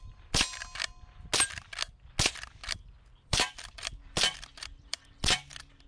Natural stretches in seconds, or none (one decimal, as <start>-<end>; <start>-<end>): 0.0-2.6